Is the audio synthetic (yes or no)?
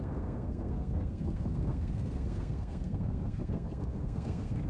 yes